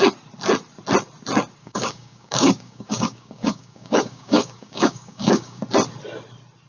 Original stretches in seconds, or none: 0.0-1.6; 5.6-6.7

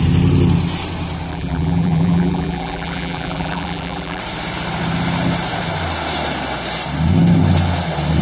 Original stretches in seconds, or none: 0.0-1.3; 4.2-8.2

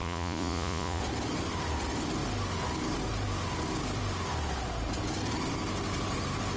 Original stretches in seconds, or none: 1.0-6.6

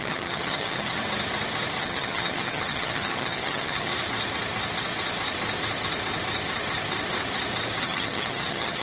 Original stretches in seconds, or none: 1.0-1.8; 3.9-7.8

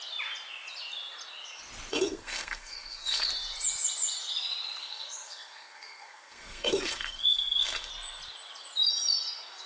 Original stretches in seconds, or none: 0.0-1.9; 3.3-4.8; 7.9-9.7